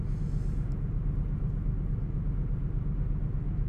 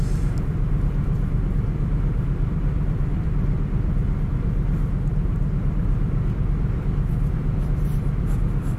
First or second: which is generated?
second